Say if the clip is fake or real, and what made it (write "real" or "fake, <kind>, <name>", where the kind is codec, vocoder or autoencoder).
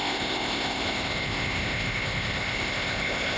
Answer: fake, codec, ZipCodec